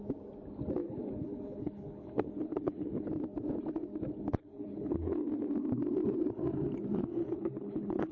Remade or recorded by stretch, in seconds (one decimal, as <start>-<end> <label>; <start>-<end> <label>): 0.0-0.8 recorded; 0.8-3.1 remade; 3.1-4.5 recorded; 4.5-5.3 remade; 5.3-7.2 recorded; 7.2-8.1 remade